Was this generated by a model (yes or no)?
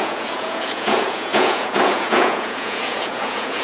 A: yes